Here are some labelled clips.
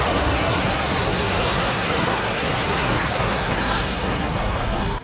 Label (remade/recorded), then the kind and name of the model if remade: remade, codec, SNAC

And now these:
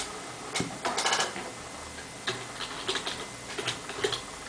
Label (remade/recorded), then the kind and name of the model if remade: recorded